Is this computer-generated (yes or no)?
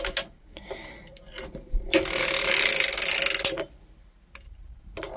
no